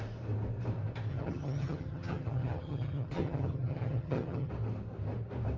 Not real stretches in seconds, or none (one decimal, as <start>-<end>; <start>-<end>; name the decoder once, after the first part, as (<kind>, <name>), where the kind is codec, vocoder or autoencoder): 1.1-4.5 (vocoder, HiFi-GAN)